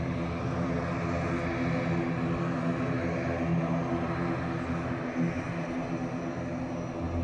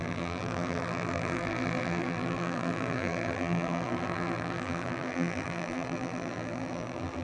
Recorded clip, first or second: first